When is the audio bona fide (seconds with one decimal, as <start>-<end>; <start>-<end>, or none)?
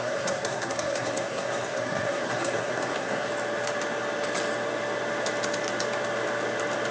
3.3-6.9